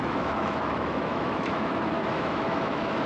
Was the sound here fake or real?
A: fake